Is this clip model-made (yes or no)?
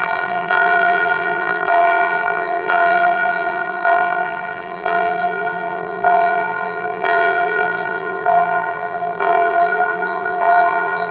yes